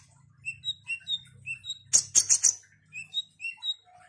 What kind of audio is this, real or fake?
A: real